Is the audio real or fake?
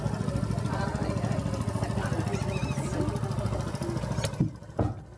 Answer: real